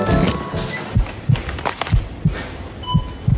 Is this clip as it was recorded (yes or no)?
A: yes